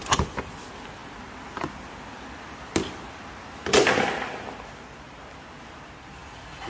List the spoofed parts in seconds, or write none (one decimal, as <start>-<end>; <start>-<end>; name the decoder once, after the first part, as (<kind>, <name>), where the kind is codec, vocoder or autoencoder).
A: none